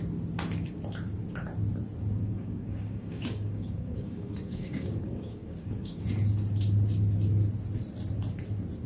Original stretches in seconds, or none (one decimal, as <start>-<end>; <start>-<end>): 0.0-2.2; 6.0-8.9

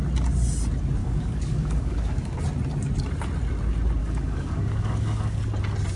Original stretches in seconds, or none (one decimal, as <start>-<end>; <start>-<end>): 0.0-1.0; 2.4-4.0; 5.4-6.0

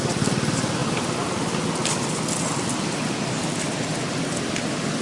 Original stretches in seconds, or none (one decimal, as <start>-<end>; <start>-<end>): 0.0-5.0

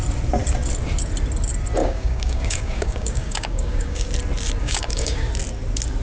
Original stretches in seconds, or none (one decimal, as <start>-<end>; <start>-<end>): 0.0-1.8; 4.1-4.6; 5.3-6.0